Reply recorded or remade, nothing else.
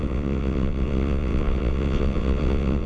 remade